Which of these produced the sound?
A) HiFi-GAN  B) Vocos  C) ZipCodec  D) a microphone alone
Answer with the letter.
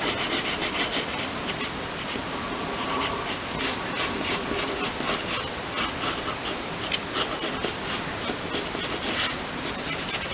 D